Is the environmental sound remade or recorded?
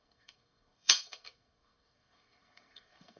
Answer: remade